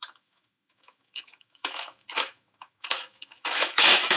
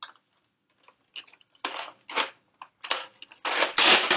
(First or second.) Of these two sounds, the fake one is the first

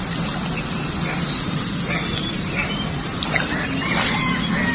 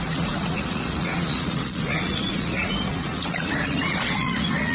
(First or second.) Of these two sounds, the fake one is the second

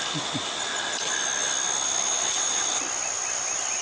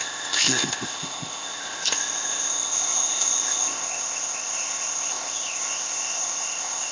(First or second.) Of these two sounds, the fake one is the second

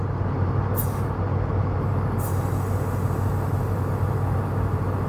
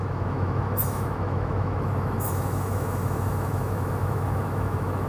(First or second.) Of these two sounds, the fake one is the second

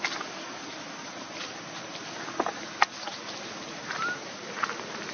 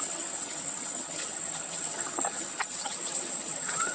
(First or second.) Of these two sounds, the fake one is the second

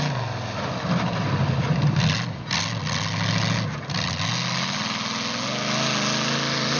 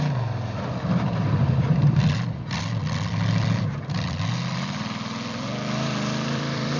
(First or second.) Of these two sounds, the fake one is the second